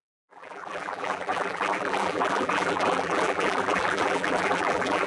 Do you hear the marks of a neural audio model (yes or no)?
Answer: yes